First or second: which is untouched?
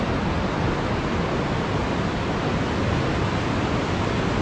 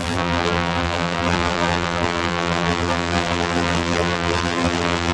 first